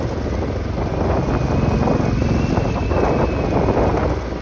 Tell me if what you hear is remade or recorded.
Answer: recorded